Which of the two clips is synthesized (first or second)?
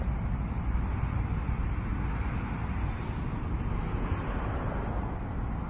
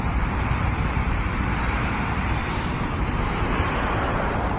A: second